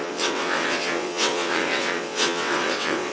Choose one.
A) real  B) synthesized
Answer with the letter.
B